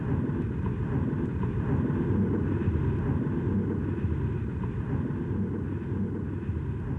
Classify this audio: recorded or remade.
recorded